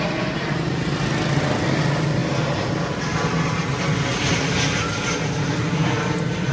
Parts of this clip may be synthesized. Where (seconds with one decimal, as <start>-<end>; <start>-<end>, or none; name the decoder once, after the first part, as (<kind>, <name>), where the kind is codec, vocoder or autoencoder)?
none